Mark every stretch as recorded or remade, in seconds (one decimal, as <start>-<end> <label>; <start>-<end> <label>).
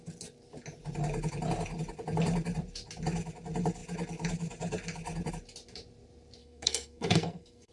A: 0.0-6.4 recorded; 6.4-7.7 remade